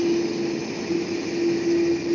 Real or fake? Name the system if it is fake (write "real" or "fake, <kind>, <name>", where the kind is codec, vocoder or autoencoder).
real